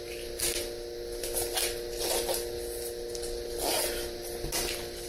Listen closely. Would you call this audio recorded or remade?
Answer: recorded